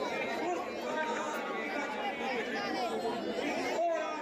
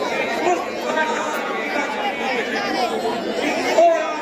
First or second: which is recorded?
first